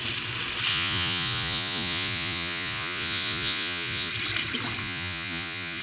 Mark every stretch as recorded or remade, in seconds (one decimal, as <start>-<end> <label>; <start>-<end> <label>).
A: 0.0-0.7 recorded; 0.7-4.1 remade; 4.1-4.8 recorded; 4.8-5.8 remade